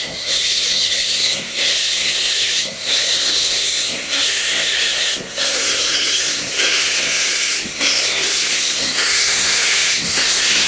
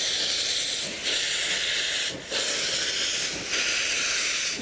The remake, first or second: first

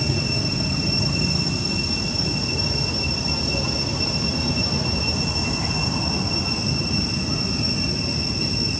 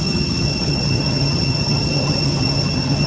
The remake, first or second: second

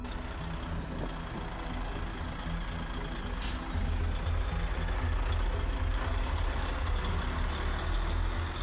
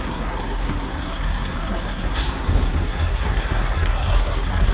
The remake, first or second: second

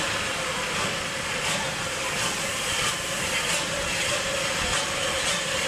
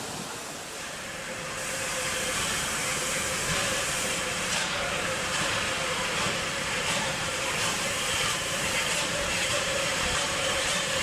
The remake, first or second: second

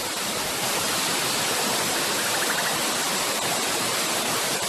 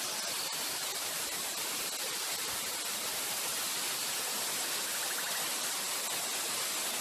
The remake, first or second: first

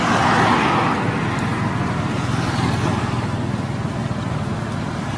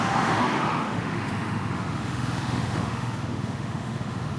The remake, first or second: second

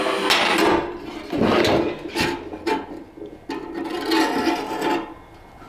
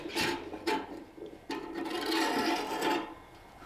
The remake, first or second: second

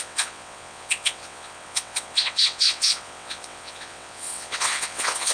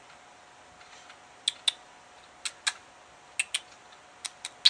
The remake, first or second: first